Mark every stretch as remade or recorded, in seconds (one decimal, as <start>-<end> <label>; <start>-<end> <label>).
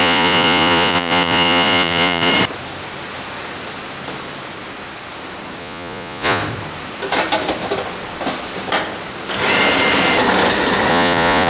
0.0-2.3 remade; 2.3-5.6 recorded; 5.6-6.4 remade; 6.4-10.9 recorded; 10.9-11.5 remade